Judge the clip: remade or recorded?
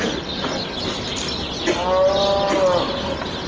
recorded